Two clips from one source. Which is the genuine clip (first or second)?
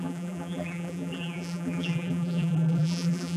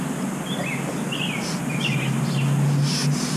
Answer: second